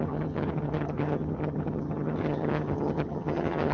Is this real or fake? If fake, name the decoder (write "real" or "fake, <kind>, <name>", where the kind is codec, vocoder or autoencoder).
fake, vocoder, HiFi-GAN